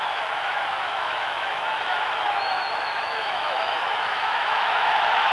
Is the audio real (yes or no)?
no